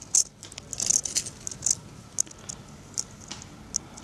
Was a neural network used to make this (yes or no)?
no